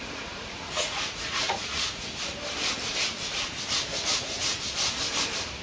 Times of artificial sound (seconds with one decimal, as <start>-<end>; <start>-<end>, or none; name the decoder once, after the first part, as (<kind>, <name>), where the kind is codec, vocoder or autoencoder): 0.0-2.1 (vocoder, Vocos); 3.9-4.6